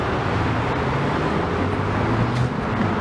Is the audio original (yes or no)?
yes